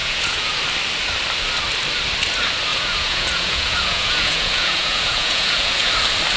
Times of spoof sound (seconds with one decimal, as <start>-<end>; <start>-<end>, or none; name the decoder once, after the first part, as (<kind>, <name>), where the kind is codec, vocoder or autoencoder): 0.0-0.5 (vocoder, Vocos); 2.7-5.9